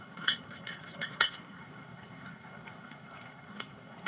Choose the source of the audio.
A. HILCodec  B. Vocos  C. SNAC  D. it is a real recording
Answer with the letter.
C